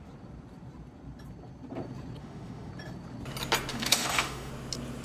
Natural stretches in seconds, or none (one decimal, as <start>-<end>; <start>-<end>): 0.0-2.2; 2.7-3.7; 4.5-5.0